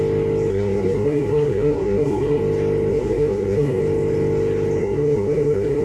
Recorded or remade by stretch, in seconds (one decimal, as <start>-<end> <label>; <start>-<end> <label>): 0.0-0.5 recorded; 0.5-2.4 remade; 2.4-2.9 recorded; 2.9-3.8 remade; 3.8-4.8 recorded; 4.8-5.8 remade